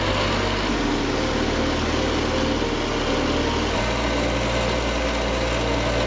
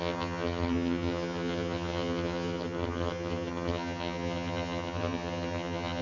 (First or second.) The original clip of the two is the first